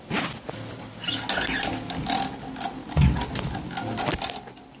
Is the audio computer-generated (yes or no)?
no